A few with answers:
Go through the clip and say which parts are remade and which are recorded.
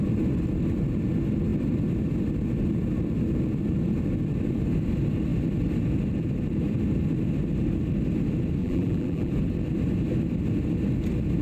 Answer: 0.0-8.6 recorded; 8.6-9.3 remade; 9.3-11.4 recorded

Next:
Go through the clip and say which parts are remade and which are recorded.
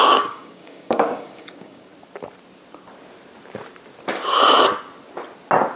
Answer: 0.0-1.9 remade; 1.9-5.8 recorded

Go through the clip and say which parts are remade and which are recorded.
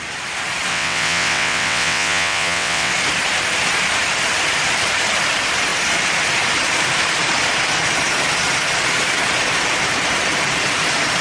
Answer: 0.0-0.7 recorded; 0.7-2.9 remade; 2.9-11.2 recorded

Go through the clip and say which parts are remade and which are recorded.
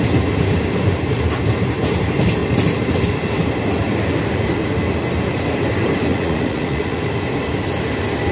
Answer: 0.0-6.1 recorded; 6.1-7.0 remade; 7.0-8.3 recorded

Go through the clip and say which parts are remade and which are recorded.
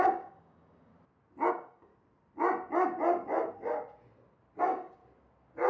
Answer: 0.0-0.9 remade; 0.9-1.5 recorded; 1.5-1.9 remade; 1.9-4.6 recorded; 4.6-5.0 remade; 5.0-5.7 recorded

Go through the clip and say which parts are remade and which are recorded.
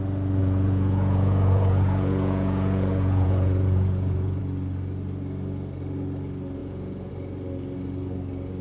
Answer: 0.0-0.4 recorded; 0.4-4.4 remade; 4.4-6.6 recorded; 6.6-7.1 remade; 7.1-8.6 recorded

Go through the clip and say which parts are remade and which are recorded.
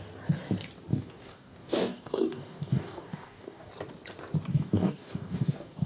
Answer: 0.0-0.9 recorded; 0.9-3.7 remade; 3.7-4.5 recorded; 4.5-5.9 remade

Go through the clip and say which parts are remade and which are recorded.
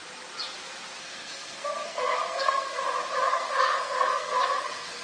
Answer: 0.0-1.0 recorded; 1.0-2.8 remade; 2.8-3.3 recorded; 3.3-5.0 remade